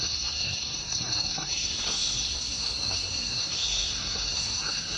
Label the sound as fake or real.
fake